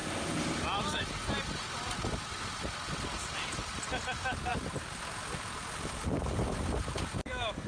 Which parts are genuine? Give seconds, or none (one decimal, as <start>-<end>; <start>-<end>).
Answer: 1.0-5.6; 6.3-7.7